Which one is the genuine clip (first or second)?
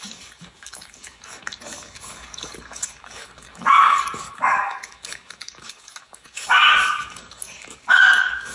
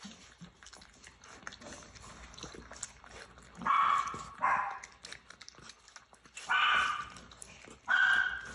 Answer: second